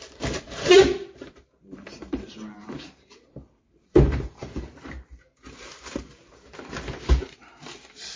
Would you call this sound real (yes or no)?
no